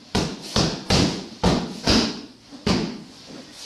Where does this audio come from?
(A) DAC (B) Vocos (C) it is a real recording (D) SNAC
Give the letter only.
B